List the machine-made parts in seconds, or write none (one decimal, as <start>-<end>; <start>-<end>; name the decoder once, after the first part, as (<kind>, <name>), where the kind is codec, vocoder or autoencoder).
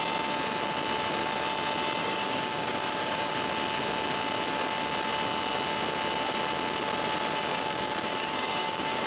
2.0-3.3 (codec, DAC); 7.5-9.1